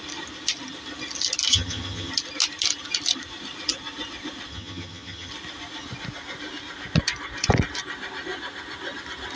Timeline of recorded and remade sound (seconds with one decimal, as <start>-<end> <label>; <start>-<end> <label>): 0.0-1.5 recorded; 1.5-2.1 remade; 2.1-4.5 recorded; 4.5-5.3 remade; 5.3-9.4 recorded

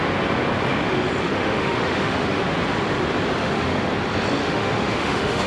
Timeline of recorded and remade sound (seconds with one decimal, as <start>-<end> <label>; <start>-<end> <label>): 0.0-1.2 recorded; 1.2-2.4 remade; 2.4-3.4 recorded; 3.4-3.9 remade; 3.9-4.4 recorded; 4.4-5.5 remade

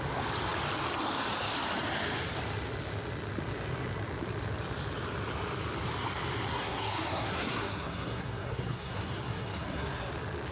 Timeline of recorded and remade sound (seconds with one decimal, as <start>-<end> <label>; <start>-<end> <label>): 0.0-6.5 recorded; 6.5-10.1 remade; 10.1-10.5 recorded

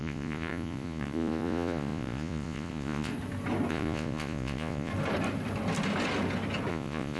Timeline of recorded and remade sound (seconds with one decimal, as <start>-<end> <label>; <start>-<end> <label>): 0.0-3.1 remade; 3.1-3.7 recorded; 3.7-4.9 remade; 4.9-6.7 recorded; 6.7-7.2 remade